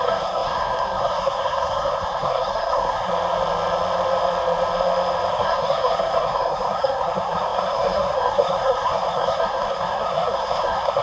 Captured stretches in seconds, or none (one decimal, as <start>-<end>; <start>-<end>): 3.1-5.3